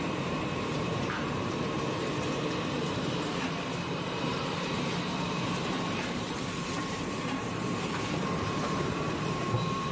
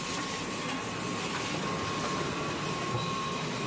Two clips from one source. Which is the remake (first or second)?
first